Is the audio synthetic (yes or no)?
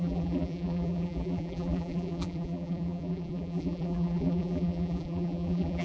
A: yes